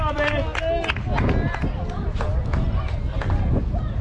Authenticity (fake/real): real